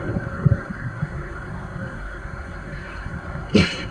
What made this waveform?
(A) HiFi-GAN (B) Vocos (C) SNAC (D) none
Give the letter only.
C